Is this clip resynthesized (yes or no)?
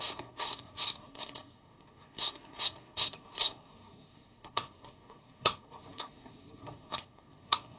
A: yes